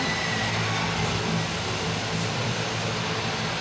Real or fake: real